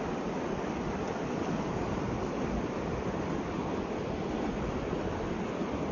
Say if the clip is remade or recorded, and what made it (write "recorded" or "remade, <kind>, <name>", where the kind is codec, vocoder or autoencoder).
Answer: recorded